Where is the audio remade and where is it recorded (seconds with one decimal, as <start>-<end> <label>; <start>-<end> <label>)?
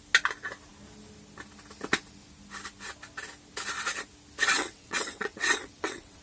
0.0-4.6 recorded; 4.6-6.2 remade